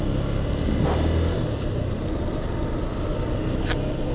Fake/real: real